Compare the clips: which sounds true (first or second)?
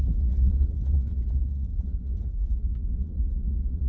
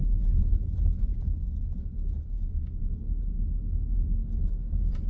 second